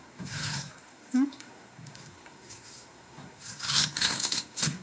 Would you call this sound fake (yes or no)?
yes